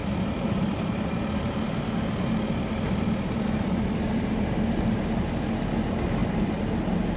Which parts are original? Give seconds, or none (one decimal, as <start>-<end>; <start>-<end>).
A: 4.3-6.2; 6.7-7.2